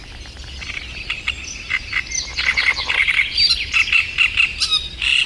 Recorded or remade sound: recorded